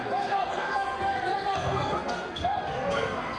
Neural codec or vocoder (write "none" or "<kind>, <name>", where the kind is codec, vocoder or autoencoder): codec, SNAC